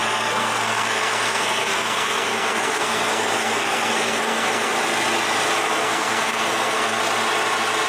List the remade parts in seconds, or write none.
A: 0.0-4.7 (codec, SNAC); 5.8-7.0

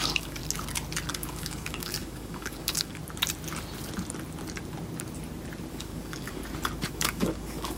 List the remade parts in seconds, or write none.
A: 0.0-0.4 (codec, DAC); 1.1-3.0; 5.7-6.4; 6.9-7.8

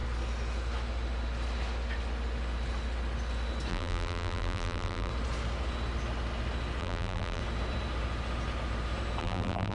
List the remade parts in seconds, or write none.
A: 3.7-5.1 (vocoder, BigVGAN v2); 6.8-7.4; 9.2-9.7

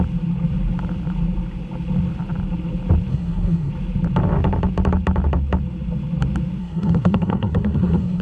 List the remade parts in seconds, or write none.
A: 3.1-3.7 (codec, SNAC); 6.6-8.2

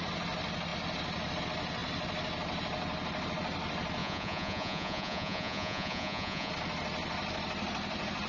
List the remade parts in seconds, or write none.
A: 4.0-6.5 (vocoder, Vocos)

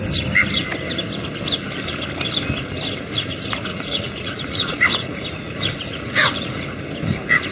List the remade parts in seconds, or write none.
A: 3.7-6.8 (vocoder, Vocos)

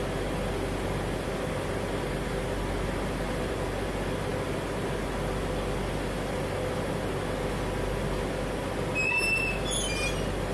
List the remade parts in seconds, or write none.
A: none